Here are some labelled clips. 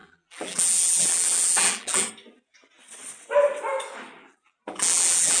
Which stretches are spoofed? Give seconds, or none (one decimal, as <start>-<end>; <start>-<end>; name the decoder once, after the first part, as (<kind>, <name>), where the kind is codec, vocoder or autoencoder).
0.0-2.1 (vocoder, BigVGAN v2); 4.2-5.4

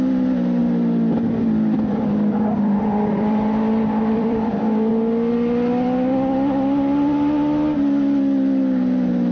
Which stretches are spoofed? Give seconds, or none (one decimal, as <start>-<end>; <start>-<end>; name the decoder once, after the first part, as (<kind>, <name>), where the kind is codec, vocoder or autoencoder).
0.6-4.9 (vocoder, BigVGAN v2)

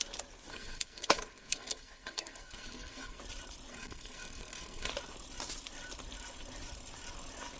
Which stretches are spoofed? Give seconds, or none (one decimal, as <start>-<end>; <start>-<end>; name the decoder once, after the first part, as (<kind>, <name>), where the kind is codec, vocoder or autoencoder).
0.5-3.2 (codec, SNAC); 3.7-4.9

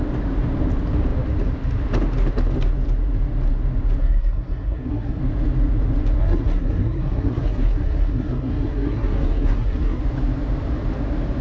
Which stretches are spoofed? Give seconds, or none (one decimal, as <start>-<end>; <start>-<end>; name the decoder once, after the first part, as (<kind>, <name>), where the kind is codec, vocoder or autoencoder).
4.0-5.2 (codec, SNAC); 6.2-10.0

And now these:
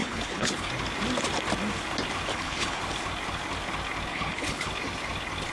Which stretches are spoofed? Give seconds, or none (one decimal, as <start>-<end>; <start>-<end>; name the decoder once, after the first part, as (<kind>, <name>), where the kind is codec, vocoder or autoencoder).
0.0-0.7 (codec, HILCodec); 2.3-2.8; 4.1-4.7